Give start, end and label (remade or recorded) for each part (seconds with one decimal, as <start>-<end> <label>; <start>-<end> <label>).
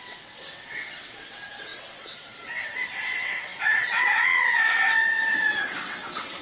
0.0-6.4 remade